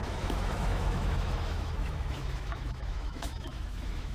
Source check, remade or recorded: remade